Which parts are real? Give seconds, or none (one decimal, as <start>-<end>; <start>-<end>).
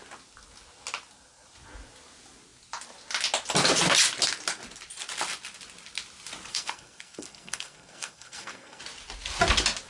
0.0-6.5; 8.8-9.9